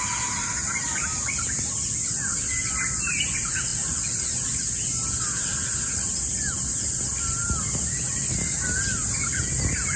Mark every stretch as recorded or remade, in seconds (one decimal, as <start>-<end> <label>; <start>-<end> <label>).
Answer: 0.0-10.0 recorded